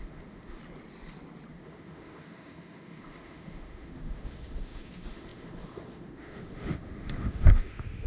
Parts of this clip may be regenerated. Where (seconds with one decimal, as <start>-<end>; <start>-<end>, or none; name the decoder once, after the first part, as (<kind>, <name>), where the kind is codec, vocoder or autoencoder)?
0.0-0.6 (autoencoder, DAC-VAE); 1.5-8.1

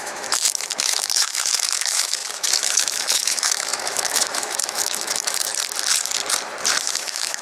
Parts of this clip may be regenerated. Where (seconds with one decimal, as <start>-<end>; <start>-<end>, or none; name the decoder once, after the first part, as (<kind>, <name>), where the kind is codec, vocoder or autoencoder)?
0.0-5.5 (autoencoder, DAC-VAE); 6.8-7.4

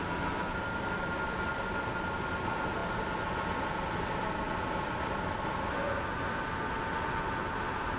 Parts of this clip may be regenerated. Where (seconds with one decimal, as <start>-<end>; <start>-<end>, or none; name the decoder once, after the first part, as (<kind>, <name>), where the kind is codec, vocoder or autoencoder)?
none

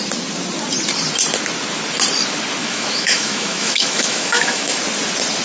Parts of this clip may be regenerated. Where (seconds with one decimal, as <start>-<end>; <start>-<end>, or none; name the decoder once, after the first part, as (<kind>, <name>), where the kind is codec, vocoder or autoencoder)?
2.6-4.8 (autoencoder, DAC-VAE)